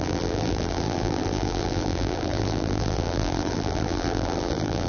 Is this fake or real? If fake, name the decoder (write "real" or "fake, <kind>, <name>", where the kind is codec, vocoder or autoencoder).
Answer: fake, vocoder, BigVGAN v2